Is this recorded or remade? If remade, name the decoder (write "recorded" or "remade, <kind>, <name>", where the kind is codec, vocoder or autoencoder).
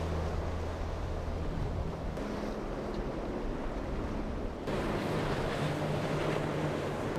recorded